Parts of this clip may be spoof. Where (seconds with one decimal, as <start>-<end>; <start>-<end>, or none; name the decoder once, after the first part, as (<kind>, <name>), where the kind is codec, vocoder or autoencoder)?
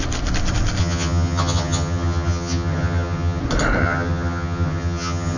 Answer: 0.8-3.4 (vocoder, HiFi-GAN); 3.8-5.4